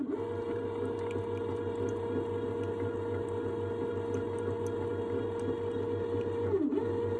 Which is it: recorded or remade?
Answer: recorded